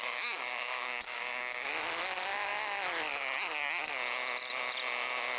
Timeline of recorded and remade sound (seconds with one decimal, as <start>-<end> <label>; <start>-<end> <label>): 0.0-1.7 remade; 1.7-5.4 recorded